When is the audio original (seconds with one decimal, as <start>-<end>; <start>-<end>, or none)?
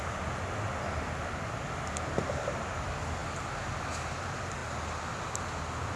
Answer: 0.0-6.0